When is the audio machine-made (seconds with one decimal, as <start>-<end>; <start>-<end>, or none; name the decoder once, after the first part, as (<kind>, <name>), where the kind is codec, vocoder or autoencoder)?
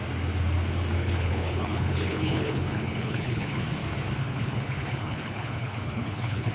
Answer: 1.0-3.6 (codec, HILCodec); 4.2-6.5